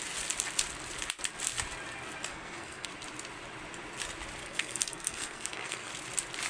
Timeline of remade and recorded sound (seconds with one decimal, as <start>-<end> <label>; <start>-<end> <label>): 0.0-2.3 recorded; 2.3-2.9 remade; 2.9-4.4 recorded; 4.4-5.9 remade; 5.9-6.5 recorded

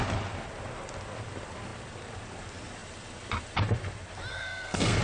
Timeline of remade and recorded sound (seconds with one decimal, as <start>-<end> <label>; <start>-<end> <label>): 0.0-4.3 recorded; 4.3-5.0 remade

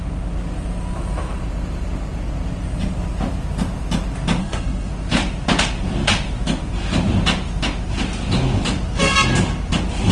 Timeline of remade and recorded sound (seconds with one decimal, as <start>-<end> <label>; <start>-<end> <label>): 0.0-4.4 recorded; 4.4-4.9 remade; 4.9-10.1 recorded

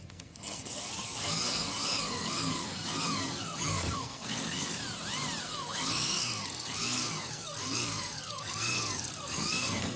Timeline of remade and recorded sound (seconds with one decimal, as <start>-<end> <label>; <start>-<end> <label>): 0.0-4.8 remade; 4.8-5.4 recorded; 5.4-10.0 remade

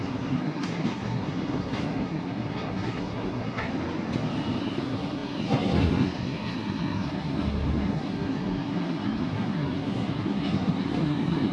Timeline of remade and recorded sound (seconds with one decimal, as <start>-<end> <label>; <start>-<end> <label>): 0.0-3.7 remade; 3.7-4.6 recorded; 4.6-11.5 remade

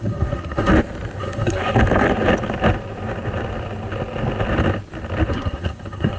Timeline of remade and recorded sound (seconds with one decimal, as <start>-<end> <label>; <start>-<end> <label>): 0.0-0.7 remade; 0.7-1.2 recorded; 1.2-1.6 remade; 1.6-5.3 recorded; 5.3-6.2 remade

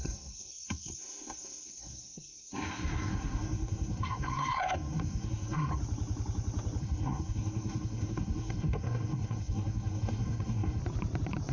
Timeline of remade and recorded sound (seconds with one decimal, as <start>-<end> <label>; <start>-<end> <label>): 0.0-5.7 remade; 5.7-6.8 recorded; 6.8-10.8 remade; 10.8-11.5 recorded